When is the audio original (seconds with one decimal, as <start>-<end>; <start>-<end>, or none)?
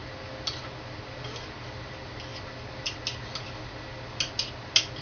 0.0-5.0